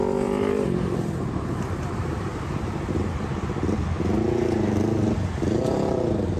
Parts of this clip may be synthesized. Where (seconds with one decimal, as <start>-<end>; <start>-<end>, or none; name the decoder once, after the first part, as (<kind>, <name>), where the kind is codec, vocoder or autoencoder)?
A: 0.0-2.3 (vocoder, BigVGAN v2); 5.4-6.4